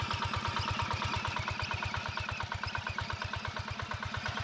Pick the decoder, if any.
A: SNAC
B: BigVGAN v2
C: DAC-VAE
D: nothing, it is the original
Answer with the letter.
D